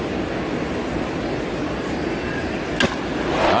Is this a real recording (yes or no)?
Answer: yes